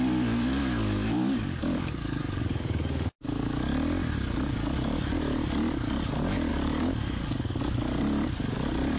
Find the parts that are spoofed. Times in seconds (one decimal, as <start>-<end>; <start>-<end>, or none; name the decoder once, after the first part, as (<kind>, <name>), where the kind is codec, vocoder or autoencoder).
0.6-3.7 (codec, DAC); 6.5-7.8